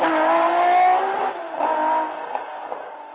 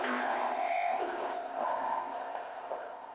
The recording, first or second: first